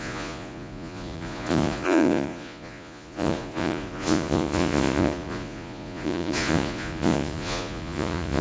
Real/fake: fake